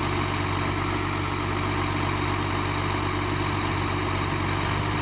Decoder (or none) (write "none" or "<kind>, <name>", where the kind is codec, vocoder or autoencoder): none